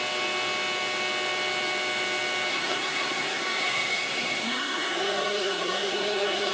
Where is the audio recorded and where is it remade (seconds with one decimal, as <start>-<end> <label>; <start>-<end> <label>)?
0.0-2.5 recorded; 2.5-6.5 remade